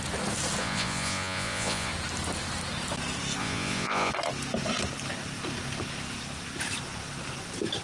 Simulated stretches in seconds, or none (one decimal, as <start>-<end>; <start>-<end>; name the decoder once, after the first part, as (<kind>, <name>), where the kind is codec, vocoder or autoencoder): 0.6-1.9 (vocoder, Vocos); 3.4-4.1